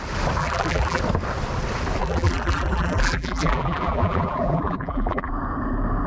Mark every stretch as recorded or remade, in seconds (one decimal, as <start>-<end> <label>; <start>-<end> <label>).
0.0-0.4 recorded; 0.4-1.0 remade; 1.0-2.0 recorded; 2.0-5.3 remade; 5.3-6.1 recorded